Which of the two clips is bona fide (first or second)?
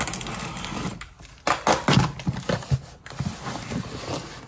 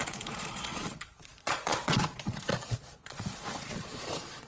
first